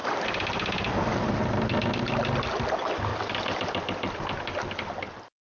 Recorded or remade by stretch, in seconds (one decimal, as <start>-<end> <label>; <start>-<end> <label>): 0.0-5.4 recorded